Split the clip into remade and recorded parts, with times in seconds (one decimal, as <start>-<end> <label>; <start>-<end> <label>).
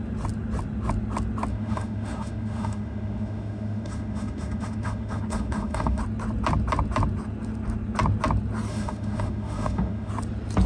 0.0-1.5 recorded; 1.5-6.0 remade; 6.0-8.7 recorded; 8.7-10.1 remade; 10.1-10.7 recorded